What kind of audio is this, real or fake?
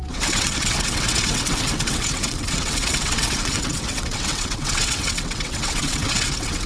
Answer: fake